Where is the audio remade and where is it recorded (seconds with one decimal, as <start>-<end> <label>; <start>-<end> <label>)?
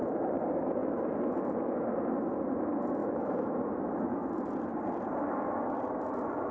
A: 0.0-3.0 recorded; 3.0-3.6 remade; 3.6-6.5 recorded